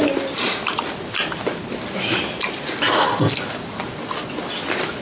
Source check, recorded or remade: recorded